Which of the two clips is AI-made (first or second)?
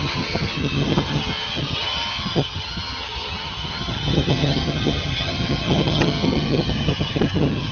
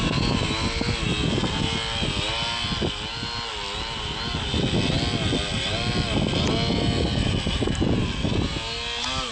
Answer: first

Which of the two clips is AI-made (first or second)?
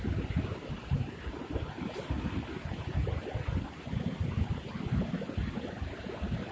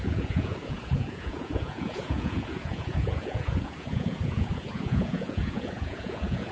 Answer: second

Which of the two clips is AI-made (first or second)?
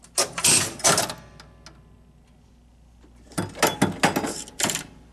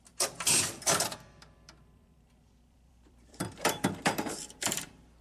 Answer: second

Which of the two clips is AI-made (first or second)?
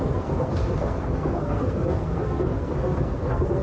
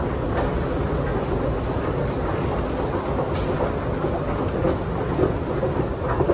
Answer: first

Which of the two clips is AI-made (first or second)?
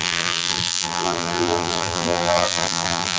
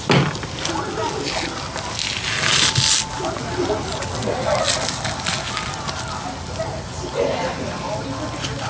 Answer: first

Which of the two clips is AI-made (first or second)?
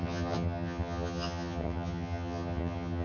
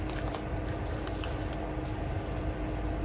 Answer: first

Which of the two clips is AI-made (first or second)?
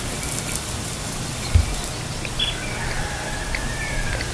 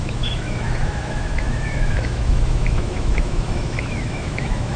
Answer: second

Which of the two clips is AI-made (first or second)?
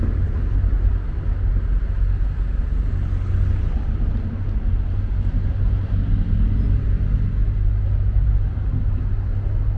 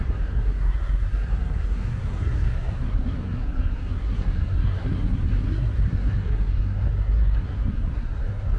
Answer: second